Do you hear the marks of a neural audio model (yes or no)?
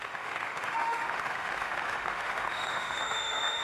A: yes